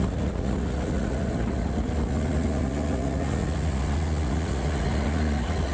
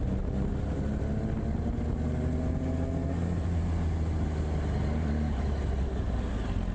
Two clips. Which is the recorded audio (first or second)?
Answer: second